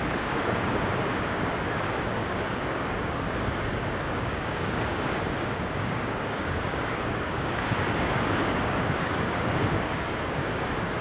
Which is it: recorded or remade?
remade